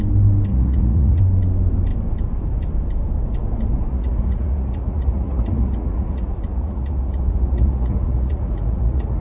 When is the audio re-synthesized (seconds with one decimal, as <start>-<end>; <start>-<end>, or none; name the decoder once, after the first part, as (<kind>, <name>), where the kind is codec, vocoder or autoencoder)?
0.5-1.2 (vocoder, Vocos); 3.9-9.2